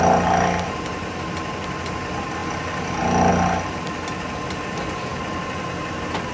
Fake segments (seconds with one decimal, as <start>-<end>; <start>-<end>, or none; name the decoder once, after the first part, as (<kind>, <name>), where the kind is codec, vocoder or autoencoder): none

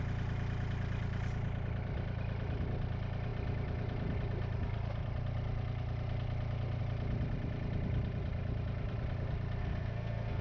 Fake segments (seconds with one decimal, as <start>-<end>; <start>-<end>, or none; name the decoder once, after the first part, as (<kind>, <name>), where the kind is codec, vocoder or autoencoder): 9.6-10.4 (codec, SNAC)

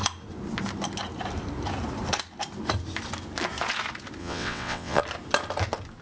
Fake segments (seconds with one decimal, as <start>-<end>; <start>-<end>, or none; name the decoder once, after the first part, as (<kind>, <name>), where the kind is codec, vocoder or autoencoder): 4.2-5.0 (vocoder, WaveNeXt)

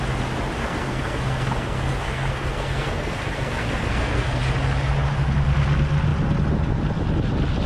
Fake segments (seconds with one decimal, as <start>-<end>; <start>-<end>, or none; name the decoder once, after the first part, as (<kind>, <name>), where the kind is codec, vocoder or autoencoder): 0.6-4.4 (codec, SNAC)

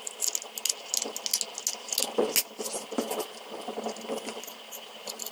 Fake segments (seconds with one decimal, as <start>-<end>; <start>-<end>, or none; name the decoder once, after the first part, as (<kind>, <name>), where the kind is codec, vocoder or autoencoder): none

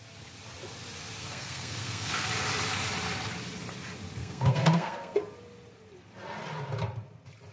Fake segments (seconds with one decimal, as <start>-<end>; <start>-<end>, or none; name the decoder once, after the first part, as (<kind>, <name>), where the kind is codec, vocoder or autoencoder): 1.2-2.3 (codec, SNAC); 4.2-5.2

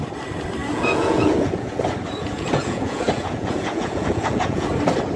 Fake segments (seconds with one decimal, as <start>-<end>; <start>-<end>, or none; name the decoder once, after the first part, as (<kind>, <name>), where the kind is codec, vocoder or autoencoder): 0.6-1.8 (vocoder, Vocos); 2.2-4.7

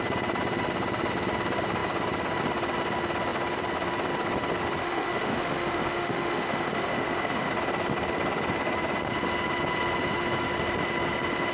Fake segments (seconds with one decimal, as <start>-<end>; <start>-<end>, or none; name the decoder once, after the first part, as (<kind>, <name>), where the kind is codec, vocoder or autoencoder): 4.8-7.5 (autoencoder, DAC-VAE)